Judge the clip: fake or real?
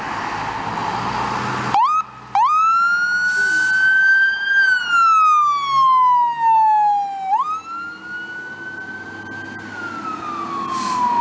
real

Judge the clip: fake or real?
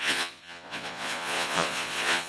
fake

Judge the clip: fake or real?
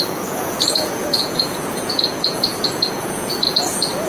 fake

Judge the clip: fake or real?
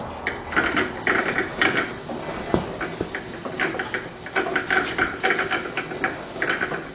real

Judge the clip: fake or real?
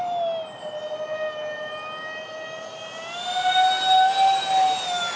real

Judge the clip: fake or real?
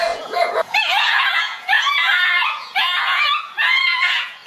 fake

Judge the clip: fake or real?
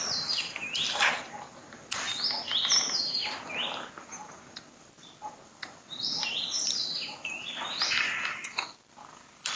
real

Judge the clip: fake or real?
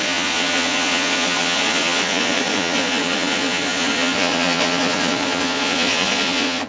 fake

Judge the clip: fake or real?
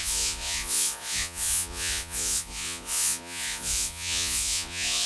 fake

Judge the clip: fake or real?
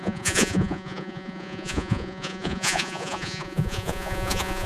fake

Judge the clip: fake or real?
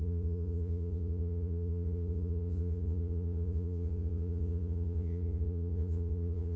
fake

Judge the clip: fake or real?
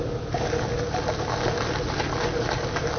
real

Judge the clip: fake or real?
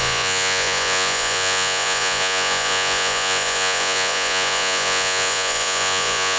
fake